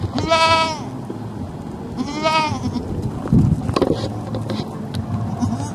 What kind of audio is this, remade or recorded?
recorded